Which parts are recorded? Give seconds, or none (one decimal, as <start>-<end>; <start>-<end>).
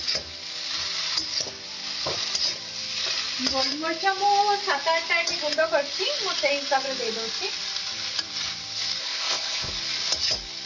0.0-9.0; 9.7-10.7